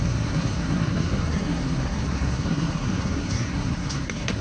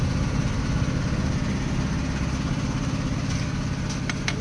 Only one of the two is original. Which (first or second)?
second